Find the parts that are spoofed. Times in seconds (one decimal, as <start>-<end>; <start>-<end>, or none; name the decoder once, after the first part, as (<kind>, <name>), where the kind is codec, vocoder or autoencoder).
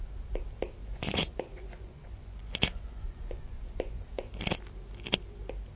0.8-4.3 (vocoder, Vocos)